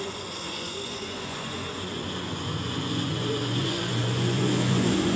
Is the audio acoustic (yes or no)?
no